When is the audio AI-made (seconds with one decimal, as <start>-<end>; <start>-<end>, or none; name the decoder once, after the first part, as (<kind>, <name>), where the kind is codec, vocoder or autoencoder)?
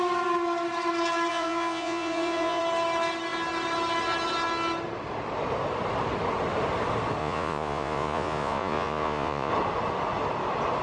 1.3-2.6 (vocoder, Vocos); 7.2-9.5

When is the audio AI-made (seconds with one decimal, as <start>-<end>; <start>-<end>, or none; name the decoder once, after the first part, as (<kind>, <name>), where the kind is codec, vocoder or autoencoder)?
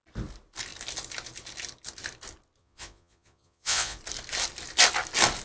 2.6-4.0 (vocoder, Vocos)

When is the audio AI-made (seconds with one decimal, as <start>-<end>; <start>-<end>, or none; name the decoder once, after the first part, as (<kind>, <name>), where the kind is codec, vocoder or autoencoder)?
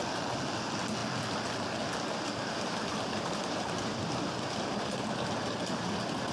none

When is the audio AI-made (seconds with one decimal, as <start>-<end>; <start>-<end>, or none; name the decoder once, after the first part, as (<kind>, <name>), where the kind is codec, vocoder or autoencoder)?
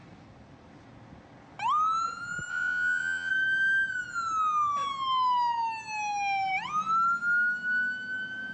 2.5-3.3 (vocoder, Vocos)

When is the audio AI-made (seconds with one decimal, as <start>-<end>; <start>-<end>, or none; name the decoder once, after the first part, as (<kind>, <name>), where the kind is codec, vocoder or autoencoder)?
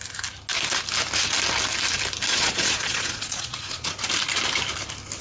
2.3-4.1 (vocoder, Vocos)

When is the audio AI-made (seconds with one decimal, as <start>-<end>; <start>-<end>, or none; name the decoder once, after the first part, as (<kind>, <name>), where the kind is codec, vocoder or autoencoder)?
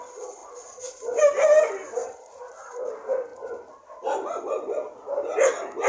none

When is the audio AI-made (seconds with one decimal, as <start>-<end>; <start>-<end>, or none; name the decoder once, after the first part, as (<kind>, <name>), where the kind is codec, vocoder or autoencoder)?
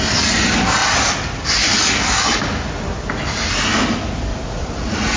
4.3-5.2 (vocoder, Vocos)